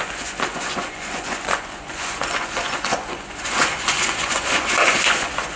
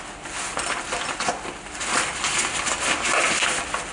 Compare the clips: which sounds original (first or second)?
second